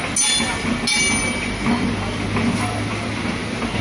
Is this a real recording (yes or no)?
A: yes